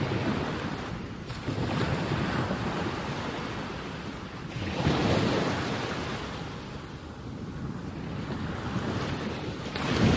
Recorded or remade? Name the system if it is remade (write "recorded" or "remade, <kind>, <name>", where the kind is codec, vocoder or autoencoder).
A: recorded